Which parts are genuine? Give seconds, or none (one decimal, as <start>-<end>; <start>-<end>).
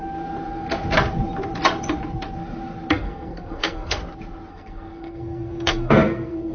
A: 0.0-2.9; 4.0-4.5